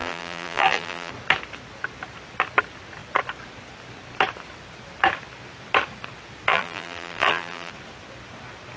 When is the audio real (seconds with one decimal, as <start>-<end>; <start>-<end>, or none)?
1.1-6.5; 7.7-8.8